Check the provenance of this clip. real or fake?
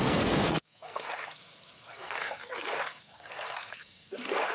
fake